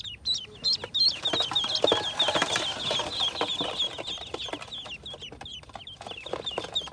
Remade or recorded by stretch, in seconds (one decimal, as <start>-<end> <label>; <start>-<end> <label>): 0.0-6.9 recorded